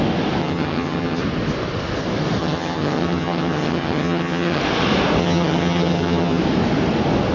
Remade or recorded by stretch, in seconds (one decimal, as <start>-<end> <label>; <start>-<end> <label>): 0.0-0.4 recorded; 0.4-1.2 remade; 1.2-2.4 recorded; 2.4-4.6 remade; 4.6-5.2 recorded; 5.2-6.4 remade; 6.4-7.3 recorded